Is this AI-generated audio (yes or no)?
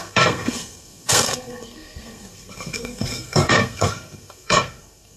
yes